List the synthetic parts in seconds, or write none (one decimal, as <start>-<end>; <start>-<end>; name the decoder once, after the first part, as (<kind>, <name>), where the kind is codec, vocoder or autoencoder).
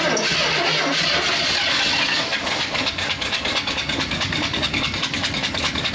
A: 2.1-5.9 (codec, DAC)